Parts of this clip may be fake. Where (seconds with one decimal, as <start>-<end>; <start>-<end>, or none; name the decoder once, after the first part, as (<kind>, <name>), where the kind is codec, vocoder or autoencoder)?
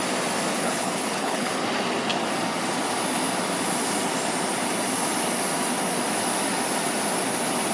0.5-1.5 (codec, HILCodec)